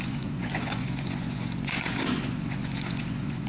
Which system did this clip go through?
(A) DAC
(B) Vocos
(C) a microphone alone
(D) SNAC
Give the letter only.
B